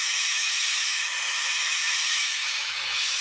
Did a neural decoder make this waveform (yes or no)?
yes